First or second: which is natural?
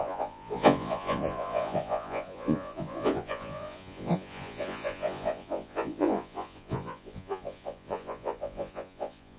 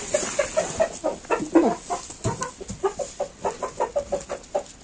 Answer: second